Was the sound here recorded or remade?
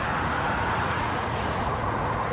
remade